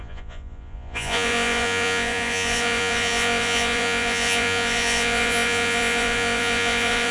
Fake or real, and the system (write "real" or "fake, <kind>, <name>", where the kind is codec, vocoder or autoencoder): fake, vocoder, Vocos